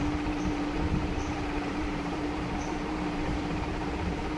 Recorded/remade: remade